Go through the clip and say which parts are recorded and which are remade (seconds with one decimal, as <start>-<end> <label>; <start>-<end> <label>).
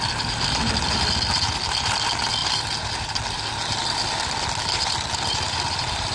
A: 0.0-6.1 recorded